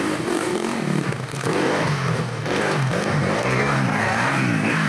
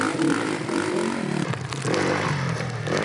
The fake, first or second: first